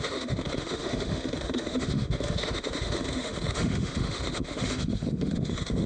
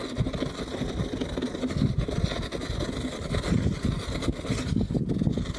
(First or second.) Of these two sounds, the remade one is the first